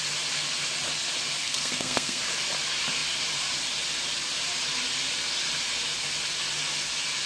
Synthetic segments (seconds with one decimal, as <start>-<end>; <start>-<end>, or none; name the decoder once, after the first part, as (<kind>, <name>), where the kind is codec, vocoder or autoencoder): 1.4-2.2 (codec, SNAC)